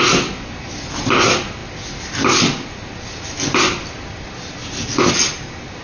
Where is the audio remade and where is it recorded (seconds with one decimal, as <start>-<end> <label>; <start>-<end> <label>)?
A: 0.0-5.8 recorded